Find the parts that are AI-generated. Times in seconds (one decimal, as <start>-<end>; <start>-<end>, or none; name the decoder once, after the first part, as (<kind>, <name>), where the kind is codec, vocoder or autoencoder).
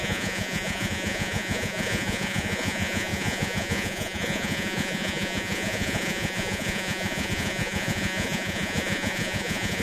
0.0-9.8 (vocoder, Vocos)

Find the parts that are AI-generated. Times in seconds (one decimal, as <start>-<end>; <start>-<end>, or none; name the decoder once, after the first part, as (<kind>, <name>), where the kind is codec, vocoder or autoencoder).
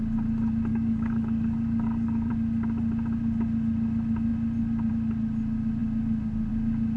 0.7-2.3 (codec, DAC)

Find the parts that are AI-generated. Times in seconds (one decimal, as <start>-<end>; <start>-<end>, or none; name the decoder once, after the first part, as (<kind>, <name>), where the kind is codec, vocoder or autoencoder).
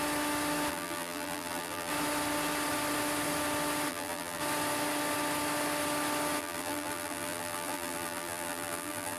0.7-1.9 (vocoder, BigVGAN v2); 3.9-4.4; 6.4-9.2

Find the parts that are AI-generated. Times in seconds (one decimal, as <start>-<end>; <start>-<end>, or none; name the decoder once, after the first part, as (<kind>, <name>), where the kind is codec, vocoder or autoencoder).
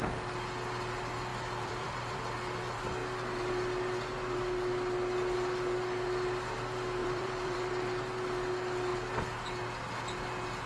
1.3-2.2 (vocoder, BigVGAN v2); 7.0-7.7